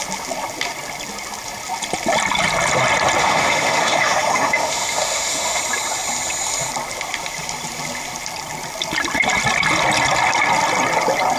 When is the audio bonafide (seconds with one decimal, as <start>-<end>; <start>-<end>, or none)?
0.0-3.2; 5.6-11.4